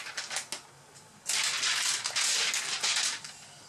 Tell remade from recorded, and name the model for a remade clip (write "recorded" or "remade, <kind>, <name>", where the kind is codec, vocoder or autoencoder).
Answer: recorded